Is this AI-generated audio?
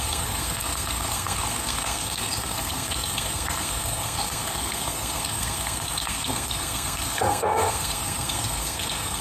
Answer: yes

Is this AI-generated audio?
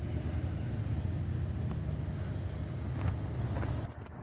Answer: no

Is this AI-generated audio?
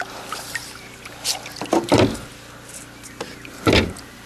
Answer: no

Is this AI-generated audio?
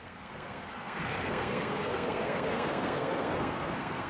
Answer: yes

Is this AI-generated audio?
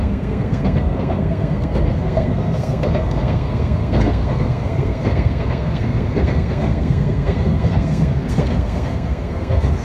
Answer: yes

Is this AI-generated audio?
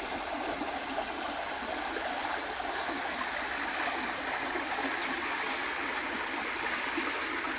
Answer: no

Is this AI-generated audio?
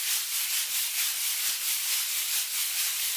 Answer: no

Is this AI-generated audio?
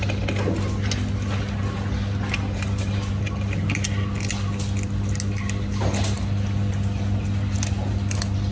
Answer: no